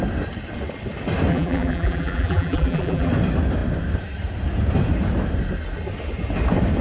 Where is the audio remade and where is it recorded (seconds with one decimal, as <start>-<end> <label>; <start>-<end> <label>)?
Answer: 0.0-1.3 recorded; 1.3-3.1 remade; 3.1-6.8 recorded